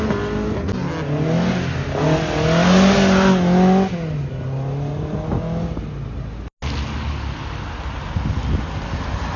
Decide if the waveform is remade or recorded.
recorded